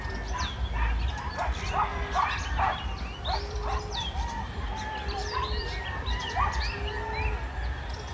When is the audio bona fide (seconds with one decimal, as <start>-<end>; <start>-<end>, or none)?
0.0-1.9; 6.6-8.1